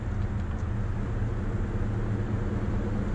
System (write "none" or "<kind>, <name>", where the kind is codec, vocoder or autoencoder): none